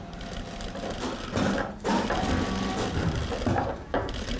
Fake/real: real